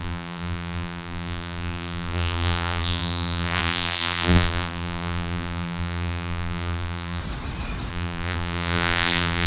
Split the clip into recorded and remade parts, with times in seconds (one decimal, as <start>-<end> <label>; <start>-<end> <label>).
0.0-7.2 remade; 7.2-7.9 recorded; 7.9-9.5 remade